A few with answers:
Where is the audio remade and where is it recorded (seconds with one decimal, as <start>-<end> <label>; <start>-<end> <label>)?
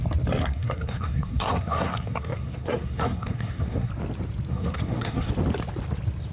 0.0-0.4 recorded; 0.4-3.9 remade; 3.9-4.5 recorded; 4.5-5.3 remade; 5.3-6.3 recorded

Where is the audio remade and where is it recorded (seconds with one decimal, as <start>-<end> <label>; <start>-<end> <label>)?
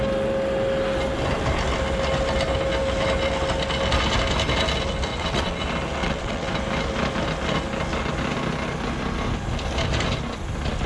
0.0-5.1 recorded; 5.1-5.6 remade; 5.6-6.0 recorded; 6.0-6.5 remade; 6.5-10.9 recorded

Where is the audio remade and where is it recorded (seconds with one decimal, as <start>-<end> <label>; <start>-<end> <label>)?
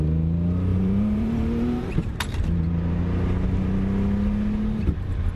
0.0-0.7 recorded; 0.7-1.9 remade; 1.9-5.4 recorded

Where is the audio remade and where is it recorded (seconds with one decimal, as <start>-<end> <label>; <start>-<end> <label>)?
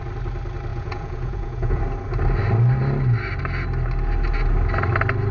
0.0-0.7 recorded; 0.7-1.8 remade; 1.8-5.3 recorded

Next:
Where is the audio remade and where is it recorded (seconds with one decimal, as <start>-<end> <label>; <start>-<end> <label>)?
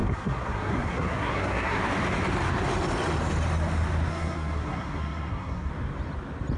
0.0-1.8 remade; 1.8-4.1 recorded; 4.1-5.7 remade; 5.7-6.6 recorded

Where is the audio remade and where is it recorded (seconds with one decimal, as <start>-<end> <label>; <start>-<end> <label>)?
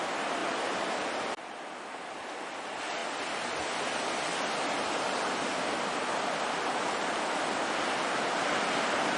0.0-9.2 recorded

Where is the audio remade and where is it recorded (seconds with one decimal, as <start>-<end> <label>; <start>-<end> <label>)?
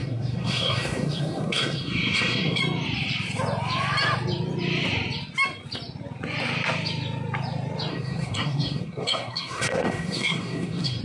0.0-2.6 remade; 2.6-7.9 recorded; 7.9-11.0 remade